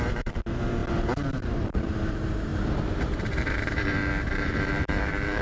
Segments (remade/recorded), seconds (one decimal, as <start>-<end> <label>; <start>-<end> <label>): 0.0-5.4 remade